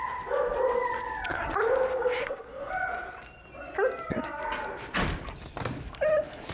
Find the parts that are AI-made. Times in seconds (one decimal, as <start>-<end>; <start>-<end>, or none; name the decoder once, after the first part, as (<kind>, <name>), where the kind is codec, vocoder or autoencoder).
2.2-2.7 (codec, SNAC)